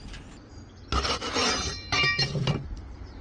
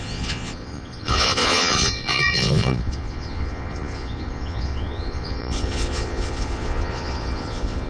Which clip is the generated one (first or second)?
second